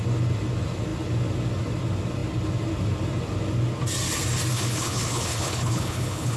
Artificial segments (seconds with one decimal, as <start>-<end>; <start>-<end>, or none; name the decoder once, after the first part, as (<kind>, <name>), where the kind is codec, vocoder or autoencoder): 4.5-6.4 (codec, HILCodec)